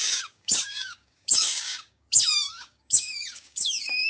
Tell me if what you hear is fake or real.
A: fake